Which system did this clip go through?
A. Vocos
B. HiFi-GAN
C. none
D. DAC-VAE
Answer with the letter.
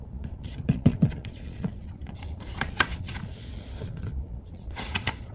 A